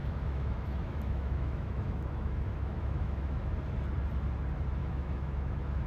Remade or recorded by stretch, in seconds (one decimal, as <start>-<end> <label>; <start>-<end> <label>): 0.0-3.5 remade; 3.5-4.8 recorded; 4.8-5.9 remade